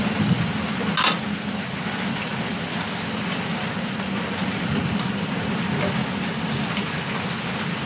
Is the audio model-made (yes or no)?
no